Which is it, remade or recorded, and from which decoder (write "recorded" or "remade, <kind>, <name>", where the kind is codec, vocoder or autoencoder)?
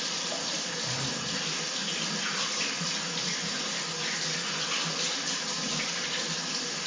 recorded